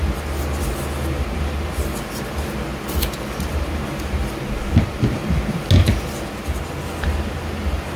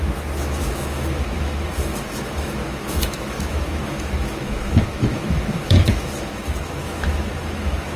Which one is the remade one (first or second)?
second